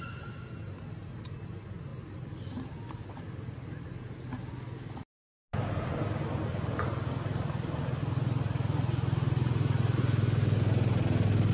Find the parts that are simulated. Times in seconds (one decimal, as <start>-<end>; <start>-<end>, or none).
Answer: none